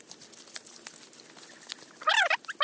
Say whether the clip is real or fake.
real